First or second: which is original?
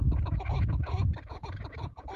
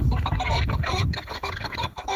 first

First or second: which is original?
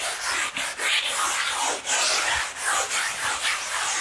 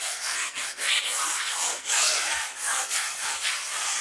first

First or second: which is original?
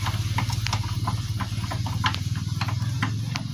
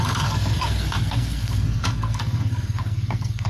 first